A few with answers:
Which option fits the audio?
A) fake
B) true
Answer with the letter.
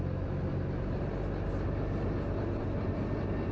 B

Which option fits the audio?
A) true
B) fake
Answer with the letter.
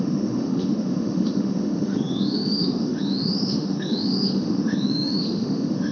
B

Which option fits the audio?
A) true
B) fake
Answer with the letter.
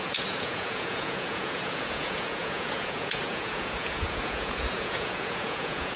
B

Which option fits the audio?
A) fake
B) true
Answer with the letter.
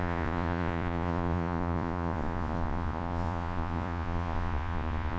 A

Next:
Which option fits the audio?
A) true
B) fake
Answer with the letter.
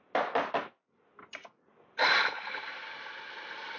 A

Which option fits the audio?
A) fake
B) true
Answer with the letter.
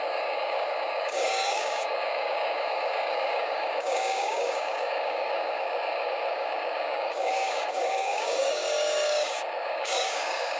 A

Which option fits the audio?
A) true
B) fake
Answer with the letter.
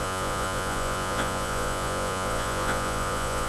B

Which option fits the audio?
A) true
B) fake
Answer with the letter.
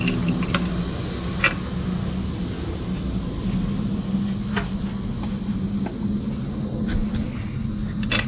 A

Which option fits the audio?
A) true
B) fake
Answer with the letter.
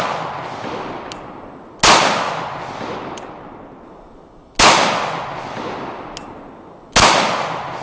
A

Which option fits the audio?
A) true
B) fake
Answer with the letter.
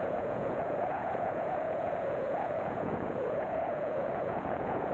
B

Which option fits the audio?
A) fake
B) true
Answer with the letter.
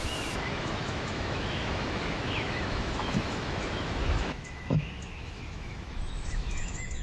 A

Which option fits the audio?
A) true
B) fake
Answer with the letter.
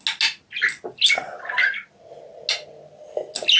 A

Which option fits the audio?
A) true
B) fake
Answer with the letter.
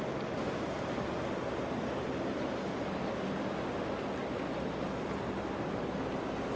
A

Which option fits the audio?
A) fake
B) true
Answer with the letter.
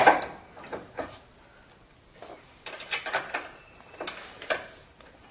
B